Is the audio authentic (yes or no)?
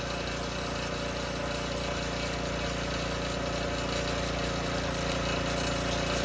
yes